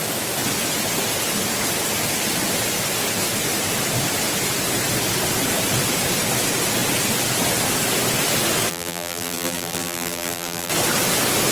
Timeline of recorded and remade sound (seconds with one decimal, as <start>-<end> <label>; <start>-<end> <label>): 0.0-8.7 recorded; 8.7-10.7 remade; 10.7-11.5 recorded